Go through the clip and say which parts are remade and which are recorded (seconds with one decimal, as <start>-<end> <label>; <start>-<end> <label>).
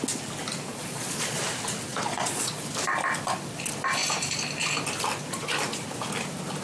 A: 0.0-0.7 recorded; 0.7-1.4 remade; 1.4-1.9 recorded; 1.9-2.7 remade; 2.7-6.6 recorded